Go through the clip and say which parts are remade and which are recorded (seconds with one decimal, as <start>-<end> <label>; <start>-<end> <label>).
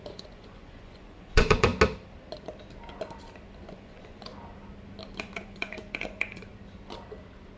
0.0-1.7 remade; 1.7-3.7 recorded; 3.7-4.3 remade; 4.3-5.2 recorded; 5.2-6.5 remade; 6.5-7.6 recorded